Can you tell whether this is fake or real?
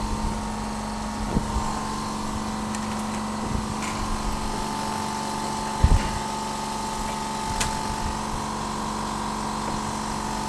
real